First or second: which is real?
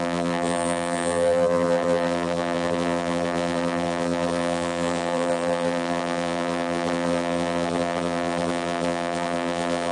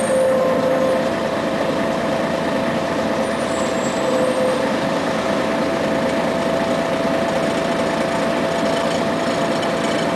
second